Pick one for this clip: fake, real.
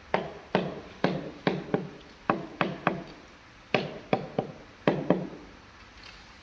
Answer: real